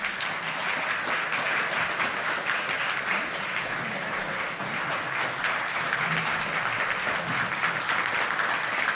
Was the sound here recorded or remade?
recorded